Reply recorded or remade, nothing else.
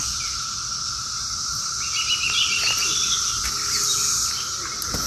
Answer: recorded